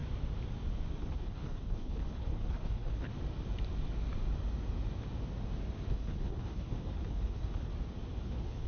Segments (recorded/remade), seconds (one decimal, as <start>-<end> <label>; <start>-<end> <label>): 0.0-1.0 recorded; 1.0-3.1 remade; 3.1-5.9 recorded; 5.9-7.7 remade; 7.7-8.2 recorded; 8.2-8.7 remade